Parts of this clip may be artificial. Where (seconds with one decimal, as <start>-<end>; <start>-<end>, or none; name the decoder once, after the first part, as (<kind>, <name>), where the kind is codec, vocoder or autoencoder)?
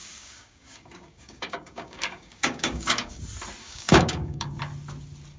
0.0-3.2 (codec, DAC); 3.6-4.6